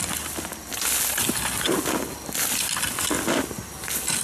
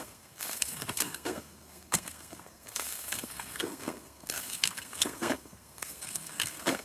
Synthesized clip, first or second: second